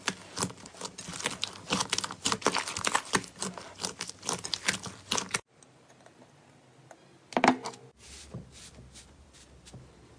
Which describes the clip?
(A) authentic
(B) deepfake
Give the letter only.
A